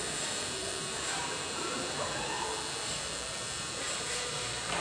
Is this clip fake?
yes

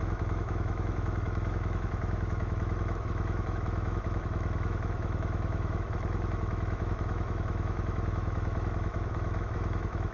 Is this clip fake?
yes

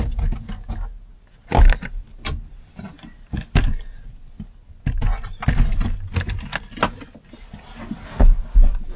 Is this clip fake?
no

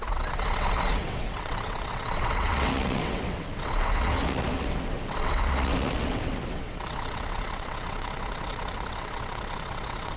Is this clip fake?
yes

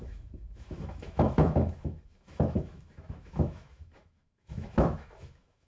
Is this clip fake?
yes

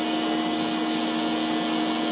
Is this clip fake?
no